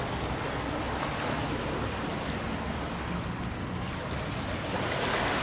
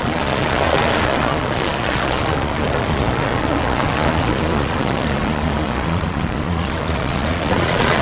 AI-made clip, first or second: second